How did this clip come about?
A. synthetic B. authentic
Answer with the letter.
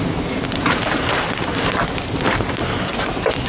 B